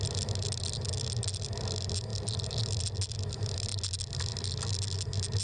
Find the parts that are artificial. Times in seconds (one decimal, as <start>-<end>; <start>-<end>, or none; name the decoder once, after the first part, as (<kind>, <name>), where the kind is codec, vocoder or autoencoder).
none